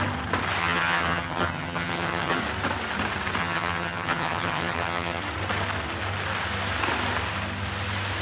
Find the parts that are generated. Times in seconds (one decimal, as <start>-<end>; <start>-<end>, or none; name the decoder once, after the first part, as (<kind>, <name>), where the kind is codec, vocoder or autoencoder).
0.6-2.4 (vocoder, HiFi-GAN); 3.4-5.2